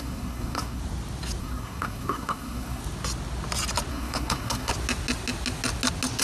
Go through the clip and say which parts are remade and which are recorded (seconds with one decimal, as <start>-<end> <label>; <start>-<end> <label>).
0.0-0.8 remade; 0.8-1.4 recorded; 1.4-2.8 remade; 2.8-3.9 recorded; 3.9-4.7 remade; 4.7-6.2 recorded